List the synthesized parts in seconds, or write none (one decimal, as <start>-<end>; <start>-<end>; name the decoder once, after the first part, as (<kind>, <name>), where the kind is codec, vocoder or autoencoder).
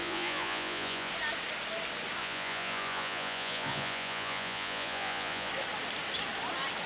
0.0-1.1 (vocoder, Vocos); 2.2-5.5